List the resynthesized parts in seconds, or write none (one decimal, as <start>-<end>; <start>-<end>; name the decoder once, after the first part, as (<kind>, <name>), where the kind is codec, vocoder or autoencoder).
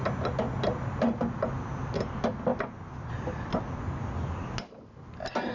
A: none